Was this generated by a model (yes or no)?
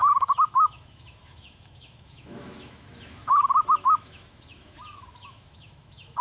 yes